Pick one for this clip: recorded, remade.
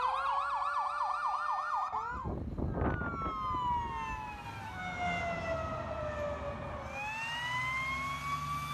recorded